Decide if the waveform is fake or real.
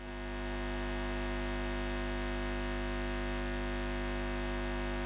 real